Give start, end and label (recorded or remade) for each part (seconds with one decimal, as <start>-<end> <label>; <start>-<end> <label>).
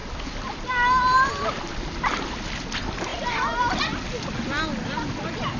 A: 0.0-5.6 recorded